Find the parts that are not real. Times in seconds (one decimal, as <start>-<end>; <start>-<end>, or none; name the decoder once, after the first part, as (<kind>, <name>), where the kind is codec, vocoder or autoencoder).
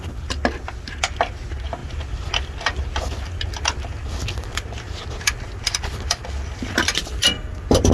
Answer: none